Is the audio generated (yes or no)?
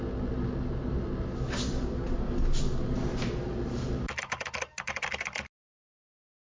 no